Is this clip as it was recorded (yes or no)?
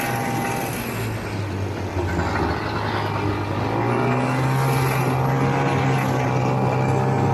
yes